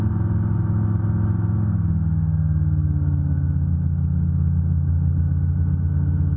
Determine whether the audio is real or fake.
real